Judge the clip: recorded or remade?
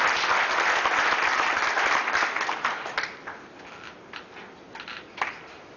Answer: recorded